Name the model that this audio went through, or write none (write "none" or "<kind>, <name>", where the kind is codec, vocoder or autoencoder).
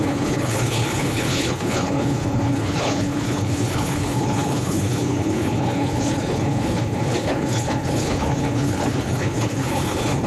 codec, HILCodec